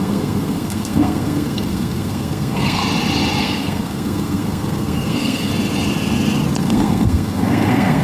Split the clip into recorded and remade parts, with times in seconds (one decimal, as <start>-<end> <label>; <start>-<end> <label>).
0.0-2.8 remade; 2.8-3.4 recorded; 3.4-5.5 remade; 5.5-6.6 recorded; 6.6-8.0 remade